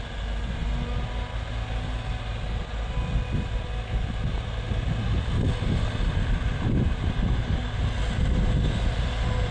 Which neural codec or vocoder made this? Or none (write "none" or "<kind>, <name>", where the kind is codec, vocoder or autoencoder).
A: none